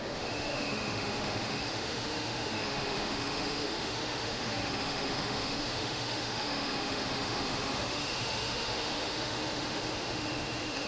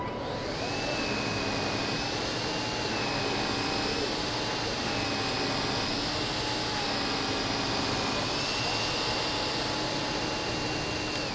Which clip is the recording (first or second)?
second